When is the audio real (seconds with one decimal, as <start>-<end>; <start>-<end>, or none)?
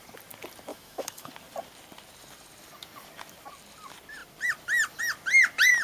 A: 0.0-0.7; 1.3-5.8